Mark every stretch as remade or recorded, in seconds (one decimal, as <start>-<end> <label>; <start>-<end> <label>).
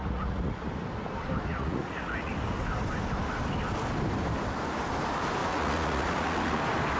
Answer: 0.0-0.6 remade; 0.6-1.5 recorded; 1.5-2.3 remade; 2.3-5.4 recorded; 5.4-6.6 remade; 6.6-7.0 recorded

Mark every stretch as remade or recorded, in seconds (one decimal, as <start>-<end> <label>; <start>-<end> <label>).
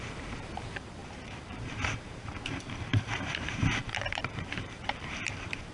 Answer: 0.0-5.7 remade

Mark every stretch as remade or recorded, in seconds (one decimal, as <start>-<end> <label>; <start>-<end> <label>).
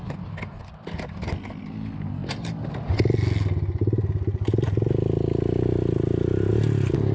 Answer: 0.0-7.1 recorded